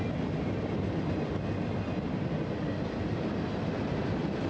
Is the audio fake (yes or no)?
no